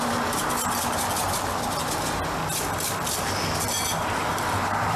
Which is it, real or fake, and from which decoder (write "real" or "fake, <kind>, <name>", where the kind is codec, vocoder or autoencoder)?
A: real